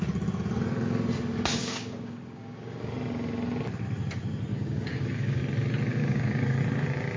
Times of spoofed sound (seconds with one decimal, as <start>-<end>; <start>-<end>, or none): 1.6-2.9; 4.5-5.4; 5.9-6.6